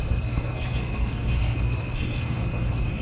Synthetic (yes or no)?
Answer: yes